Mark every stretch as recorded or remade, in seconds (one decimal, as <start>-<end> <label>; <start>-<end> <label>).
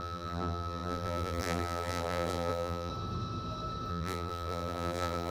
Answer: 0.0-2.9 remade; 2.9-3.9 recorded; 3.9-5.3 remade